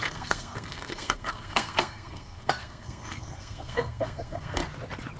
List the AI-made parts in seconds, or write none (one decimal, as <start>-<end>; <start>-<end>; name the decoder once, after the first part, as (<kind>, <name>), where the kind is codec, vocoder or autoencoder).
0.0-4.6 (codec, SNAC)